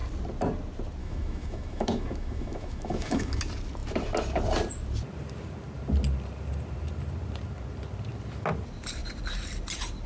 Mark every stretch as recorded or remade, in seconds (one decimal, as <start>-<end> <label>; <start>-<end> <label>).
0.0-1.0 recorded; 1.0-3.4 remade; 3.4-10.1 recorded

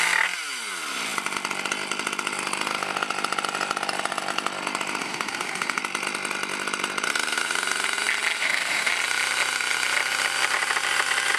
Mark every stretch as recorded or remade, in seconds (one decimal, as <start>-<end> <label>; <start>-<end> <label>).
0.0-5.0 recorded; 5.0-5.8 remade; 5.8-8.4 recorded; 8.4-8.9 remade; 8.9-11.4 recorded

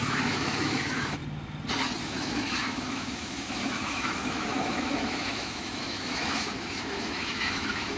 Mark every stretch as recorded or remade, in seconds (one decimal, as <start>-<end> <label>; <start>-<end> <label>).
0.0-1.2 remade; 1.2-2.0 recorded; 2.0-8.0 remade

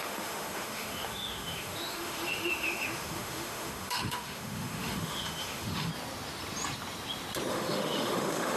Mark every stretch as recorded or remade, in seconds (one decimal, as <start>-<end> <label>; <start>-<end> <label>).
0.0-5.9 remade; 5.9-7.5 recorded; 7.5-8.6 remade

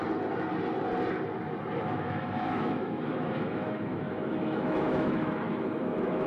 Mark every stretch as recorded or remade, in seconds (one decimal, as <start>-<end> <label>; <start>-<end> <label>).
0.0-1.8 recorded; 1.8-6.3 remade

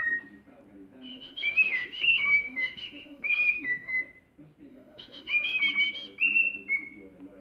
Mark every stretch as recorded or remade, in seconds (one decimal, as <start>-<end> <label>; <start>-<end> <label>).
0.0-1.1 recorded; 1.1-4.0 remade; 4.0-4.7 recorded; 4.7-5.6 remade; 5.6-7.4 recorded

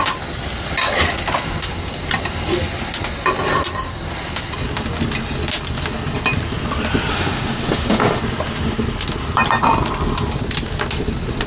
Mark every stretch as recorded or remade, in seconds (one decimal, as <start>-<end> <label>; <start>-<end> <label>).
0.0-7.1 recorded; 7.1-8.2 remade; 8.2-11.5 recorded